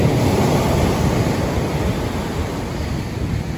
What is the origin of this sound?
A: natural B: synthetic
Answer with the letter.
A